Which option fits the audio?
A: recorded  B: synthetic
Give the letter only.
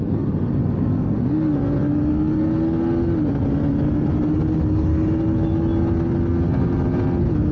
A